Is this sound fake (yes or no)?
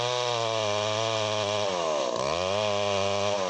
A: no